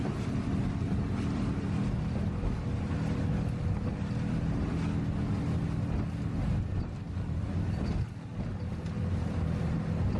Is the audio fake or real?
real